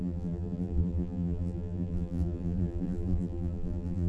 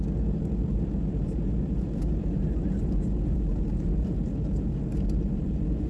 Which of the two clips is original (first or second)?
second